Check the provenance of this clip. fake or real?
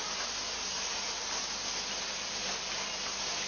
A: real